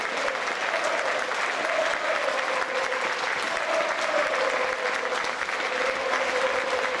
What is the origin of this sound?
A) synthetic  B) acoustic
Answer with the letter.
B